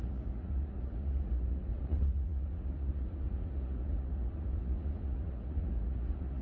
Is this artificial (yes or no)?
yes